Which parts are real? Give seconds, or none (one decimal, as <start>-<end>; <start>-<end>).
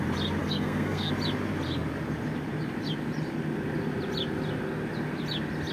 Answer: 0.0-0.4; 1.1-5.7